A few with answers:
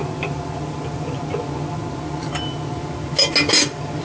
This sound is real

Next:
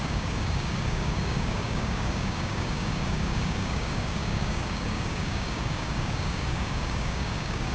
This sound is fake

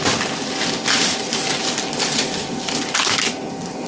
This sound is real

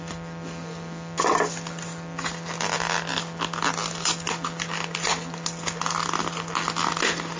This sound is real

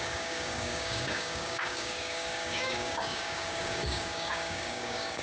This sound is fake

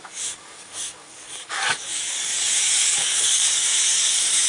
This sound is fake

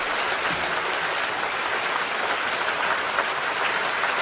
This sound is real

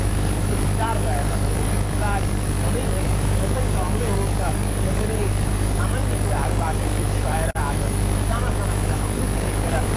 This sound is fake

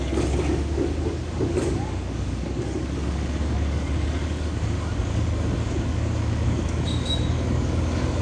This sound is fake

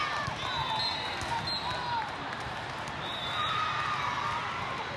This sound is real